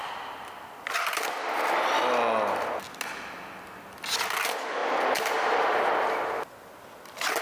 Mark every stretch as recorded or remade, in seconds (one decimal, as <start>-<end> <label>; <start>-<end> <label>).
0.0-7.4 recorded